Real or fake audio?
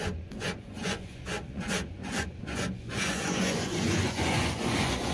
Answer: fake